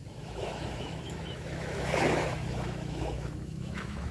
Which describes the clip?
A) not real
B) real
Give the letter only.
A